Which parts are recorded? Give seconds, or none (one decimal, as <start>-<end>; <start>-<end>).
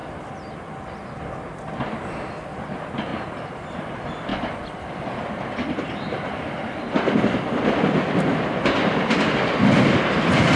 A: 0.0-4.3; 7.2-10.6